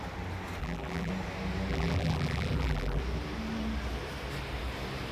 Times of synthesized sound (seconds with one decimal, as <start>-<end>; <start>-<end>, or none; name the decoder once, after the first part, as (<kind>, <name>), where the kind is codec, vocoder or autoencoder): 0.6-1.1 (vocoder, BigVGAN v2); 1.7-3.0